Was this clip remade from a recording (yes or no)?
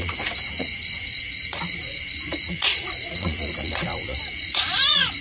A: yes